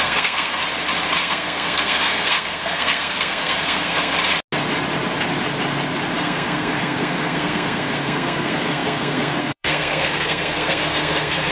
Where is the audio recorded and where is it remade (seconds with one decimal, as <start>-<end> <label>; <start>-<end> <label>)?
0.0-0.6 remade; 0.6-1.2 recorded; 1.2-4.1 remade; 4.1-6.2 recorded; 6.2-11.5 remade